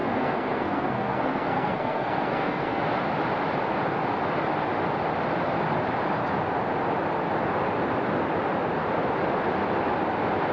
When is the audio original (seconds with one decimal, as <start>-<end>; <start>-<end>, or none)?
2.8-10.5